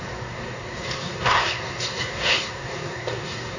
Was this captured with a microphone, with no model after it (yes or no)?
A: no